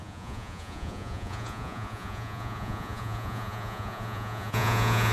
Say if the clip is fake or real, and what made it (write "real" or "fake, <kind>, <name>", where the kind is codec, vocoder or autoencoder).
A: fake, vocoder, Vocos